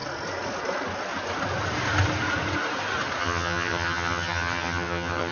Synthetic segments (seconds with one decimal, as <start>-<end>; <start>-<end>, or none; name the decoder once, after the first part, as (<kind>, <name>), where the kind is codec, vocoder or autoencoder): 3.2-5.3 (vocoder, HiFi-GAN)